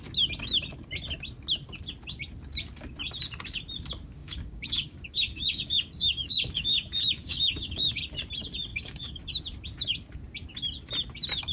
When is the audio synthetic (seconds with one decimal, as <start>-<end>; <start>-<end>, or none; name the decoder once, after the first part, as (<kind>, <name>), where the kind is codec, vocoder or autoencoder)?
4.2-8.0 (codec, DAC); 8.7-9.2

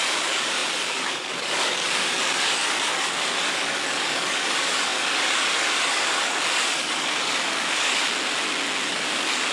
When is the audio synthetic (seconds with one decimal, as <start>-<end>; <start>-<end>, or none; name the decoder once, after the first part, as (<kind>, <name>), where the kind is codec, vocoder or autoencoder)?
0.0-8.0 (codec, DAC); 8.8-9.5

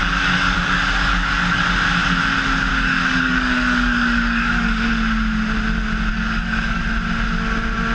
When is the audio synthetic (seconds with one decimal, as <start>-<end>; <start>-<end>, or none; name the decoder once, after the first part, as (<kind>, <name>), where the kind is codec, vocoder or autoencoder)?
0.0-1.6 (codec, DAC); 2.7-4.9; 6.1-6.8

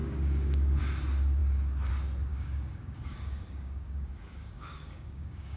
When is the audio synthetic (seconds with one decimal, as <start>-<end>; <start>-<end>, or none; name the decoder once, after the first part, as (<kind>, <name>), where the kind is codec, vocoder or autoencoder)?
0.0-0.8 (codec, DAC); 2.3-5.6

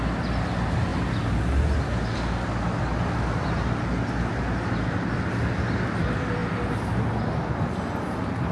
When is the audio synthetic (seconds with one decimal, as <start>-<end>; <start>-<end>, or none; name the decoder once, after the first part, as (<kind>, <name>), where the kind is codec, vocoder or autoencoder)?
none

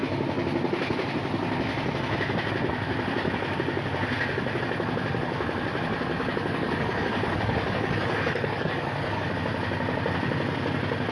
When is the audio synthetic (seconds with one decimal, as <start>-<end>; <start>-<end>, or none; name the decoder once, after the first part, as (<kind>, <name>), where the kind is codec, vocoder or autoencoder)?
6.1-9.3 (codec, DAC)